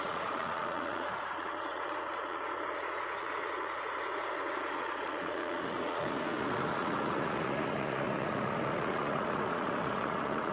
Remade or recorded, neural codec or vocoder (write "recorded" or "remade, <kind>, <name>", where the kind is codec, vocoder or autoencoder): remade, vocoder, Vocos